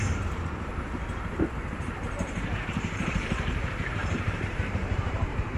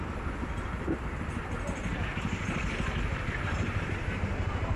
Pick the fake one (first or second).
first